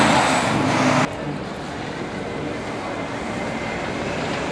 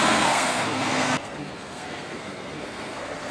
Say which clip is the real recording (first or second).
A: first